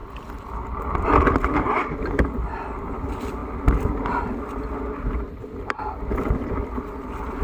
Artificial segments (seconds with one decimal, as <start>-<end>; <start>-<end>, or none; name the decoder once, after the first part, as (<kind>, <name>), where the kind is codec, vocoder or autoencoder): 0.5-3.4 (vocoder, BigVGAN v2); 5.6-7.4